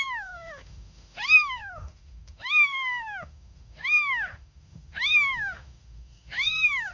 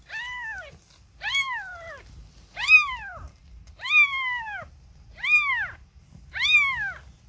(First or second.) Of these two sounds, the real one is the second